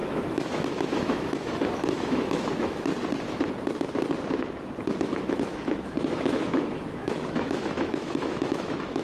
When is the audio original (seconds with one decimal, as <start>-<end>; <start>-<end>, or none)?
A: 2.9-5.0